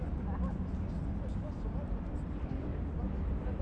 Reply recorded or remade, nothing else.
recorded